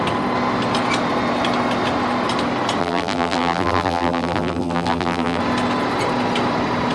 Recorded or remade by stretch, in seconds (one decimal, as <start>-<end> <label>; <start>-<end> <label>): 0.0-2.8 recorded; 2.8-5.4 remade; 5.4-6.9 recorded